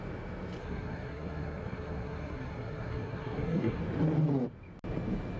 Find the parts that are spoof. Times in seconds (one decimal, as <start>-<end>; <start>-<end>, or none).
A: 0.6-3.8